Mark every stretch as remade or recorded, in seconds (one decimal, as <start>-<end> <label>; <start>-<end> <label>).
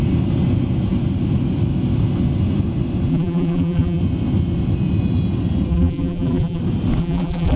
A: 0.0-3.1 recorded; 3.1-4.0 remade; 4.0-5.7 recorded; 5.7-6.6 remade; 6.6-7.0 recorded; 7.0-7.6 remade